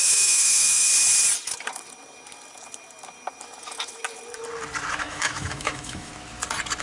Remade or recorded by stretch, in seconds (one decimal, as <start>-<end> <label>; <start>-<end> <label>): 0.0-0.9 remade; 0.9-5.0 recorded; 5.0-6.1 remade; 6.1-6.8 recorded